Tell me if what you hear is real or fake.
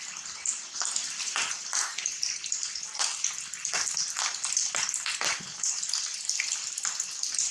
real